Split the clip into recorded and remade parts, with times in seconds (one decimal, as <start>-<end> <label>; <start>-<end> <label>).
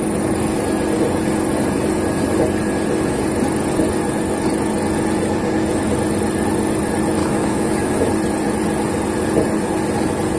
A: 0.0-7.2 recorded; 7.2-8.1 remade; 8.1-10.4 recorded